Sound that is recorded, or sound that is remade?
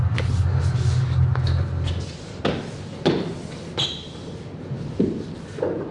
recorded